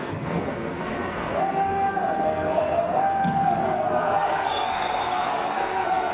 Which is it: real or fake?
fake